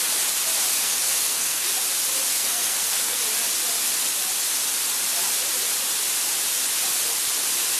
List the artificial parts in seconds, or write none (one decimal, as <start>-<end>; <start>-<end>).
0.8-1.7; 2.3-3.2

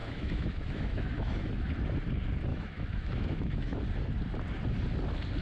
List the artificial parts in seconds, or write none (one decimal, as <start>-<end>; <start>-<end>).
0.0-1.5; 2.5-3.8

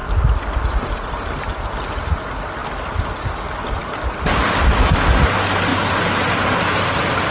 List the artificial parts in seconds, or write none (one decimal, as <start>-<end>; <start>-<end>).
none